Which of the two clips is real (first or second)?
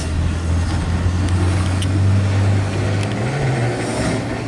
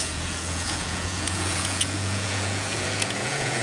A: first